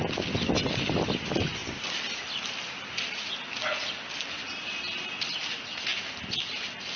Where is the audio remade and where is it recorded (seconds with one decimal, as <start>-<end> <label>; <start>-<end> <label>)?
0.0-7.0 recorded